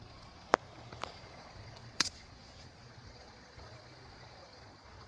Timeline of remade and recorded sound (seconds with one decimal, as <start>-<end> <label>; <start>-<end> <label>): 0.0-0.5 remade; 0.5-1.1 recorded; 1.1-5.1 remade